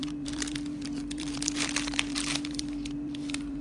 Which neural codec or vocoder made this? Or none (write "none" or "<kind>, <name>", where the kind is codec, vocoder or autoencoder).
vocoder, BigVGAN v2